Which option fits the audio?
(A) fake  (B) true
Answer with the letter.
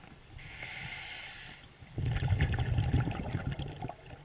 B